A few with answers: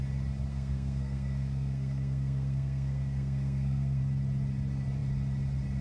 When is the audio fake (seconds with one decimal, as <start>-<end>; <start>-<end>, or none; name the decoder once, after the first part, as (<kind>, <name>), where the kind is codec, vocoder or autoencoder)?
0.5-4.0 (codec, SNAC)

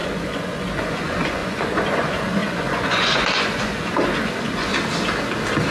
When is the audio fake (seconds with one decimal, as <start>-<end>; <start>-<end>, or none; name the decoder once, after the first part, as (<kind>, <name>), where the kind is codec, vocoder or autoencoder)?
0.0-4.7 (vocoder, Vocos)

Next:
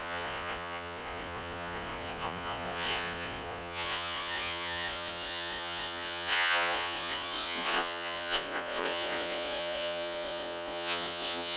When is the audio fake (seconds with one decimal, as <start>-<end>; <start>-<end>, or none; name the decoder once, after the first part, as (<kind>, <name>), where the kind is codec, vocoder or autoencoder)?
0.0-11.6 (vocoder, Vocos)

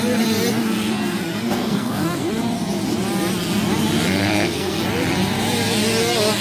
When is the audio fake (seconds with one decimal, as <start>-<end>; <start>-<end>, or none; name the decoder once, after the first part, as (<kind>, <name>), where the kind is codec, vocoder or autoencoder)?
0.6-2.3 (codec, SNAC); 4.2-4.8